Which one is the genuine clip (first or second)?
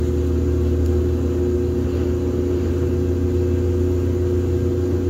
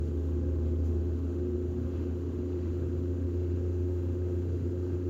first